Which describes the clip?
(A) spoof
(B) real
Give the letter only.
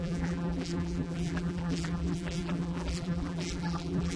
A